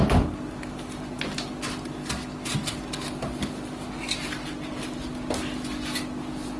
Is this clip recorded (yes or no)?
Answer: yes